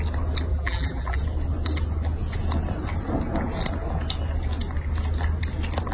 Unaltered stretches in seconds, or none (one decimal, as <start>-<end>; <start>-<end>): 0.0-0.5; 1.2-5.9